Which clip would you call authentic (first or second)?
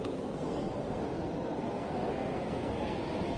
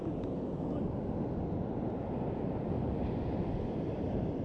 second